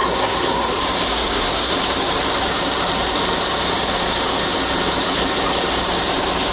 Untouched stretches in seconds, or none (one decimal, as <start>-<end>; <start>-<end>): 0.7-1.1; 1.7-6.5